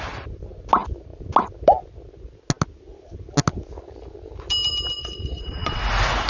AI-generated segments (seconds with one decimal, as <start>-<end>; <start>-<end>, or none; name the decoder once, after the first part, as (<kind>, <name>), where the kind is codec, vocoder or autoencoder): 5.0-5.8 (vocoder, WaveNeXt)